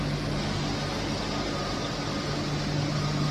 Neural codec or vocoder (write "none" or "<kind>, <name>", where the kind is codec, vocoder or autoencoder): none